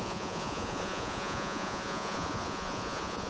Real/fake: fake